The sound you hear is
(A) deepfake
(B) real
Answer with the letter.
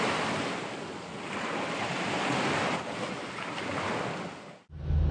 B